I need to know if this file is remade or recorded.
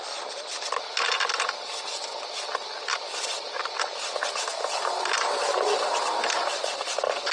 recorded